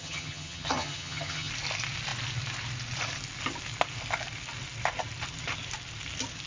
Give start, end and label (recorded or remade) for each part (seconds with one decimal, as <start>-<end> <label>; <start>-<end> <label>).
0.0-1.5 remade; 1.5-6.5 recorded